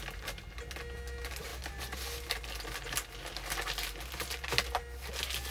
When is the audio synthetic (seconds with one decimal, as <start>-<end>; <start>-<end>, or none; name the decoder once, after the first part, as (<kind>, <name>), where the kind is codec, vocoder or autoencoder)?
none